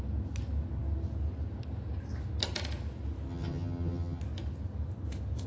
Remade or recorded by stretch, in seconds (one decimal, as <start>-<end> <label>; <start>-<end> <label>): 0.0-3.3 recorded; 3.3-4.2 remade; 4.2-5.5 recorded